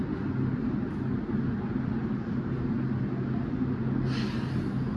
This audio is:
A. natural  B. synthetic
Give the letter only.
A